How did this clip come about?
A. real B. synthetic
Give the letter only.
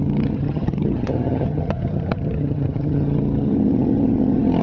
B